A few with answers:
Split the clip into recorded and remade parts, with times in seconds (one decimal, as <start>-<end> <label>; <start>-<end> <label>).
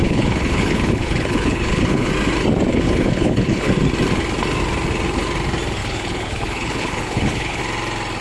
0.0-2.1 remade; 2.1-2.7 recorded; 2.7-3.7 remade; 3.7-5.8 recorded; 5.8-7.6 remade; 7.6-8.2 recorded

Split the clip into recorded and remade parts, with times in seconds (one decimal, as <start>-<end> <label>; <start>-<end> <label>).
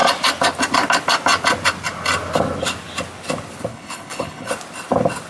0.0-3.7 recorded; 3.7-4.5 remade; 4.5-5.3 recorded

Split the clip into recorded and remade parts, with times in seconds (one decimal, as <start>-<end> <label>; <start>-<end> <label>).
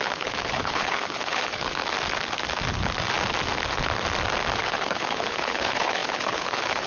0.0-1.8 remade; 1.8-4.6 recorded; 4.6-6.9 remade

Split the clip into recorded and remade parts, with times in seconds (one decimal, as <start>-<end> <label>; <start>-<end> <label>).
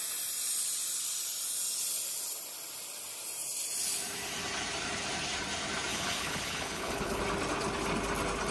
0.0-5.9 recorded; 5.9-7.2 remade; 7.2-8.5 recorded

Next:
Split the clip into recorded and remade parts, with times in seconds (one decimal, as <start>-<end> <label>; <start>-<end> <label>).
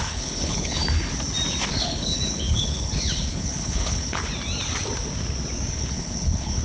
0.0-0.8 remade; 0.8-1.7 recorded; 1.7-4.2 remade; 4.2-5.7 recorded; 5.7-6.6 remade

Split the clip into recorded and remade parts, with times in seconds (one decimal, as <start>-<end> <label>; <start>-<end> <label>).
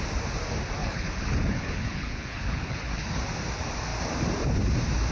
0.0-0.8 recorded; 0.8-3.2 remade; 3.2-5.1 recorded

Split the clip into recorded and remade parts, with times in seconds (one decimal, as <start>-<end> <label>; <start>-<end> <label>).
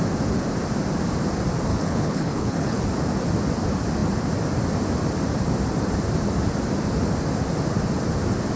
0.0-1.7 recorded; 1.7-2.8 remade; 2.8-8.6 recorded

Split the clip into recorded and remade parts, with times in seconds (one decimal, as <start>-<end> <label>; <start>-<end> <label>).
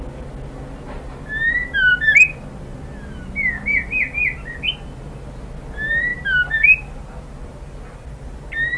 0.0-8.8 recorded